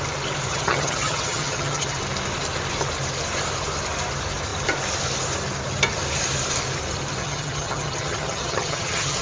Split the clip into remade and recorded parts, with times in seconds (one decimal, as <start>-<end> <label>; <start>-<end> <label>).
0.0-0.5 recorded; 0.5-2.0 remade; 2.0-7.2 recorded; 7.2-9.2 remade